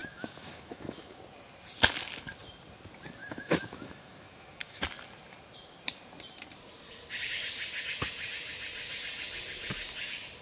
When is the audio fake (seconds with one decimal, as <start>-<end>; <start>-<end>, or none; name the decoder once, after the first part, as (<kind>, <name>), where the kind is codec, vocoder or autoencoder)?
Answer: 0.0-1.2 (autoencoder, DAC-VAE); 3.2-4.8